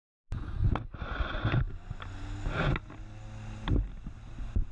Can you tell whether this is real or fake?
real